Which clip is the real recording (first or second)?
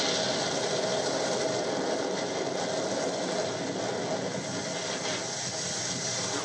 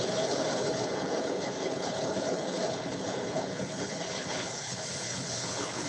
first